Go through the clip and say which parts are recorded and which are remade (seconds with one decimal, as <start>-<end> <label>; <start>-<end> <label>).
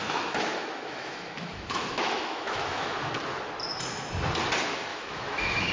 0.0-3.1 remade; 3.1-4.9 recorded; 4.9-5.7 remade